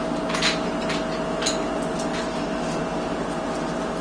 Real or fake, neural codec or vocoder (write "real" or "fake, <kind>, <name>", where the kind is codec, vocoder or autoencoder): real